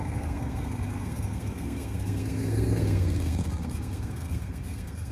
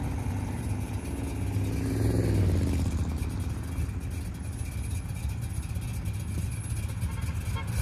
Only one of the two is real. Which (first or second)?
second